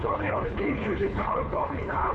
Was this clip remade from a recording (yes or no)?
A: yes